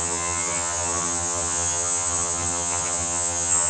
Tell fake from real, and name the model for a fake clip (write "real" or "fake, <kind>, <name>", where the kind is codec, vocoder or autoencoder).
fake, vocoder, HiFi-GAN